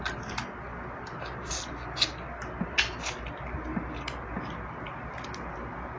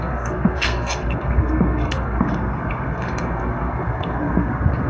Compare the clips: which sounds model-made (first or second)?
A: second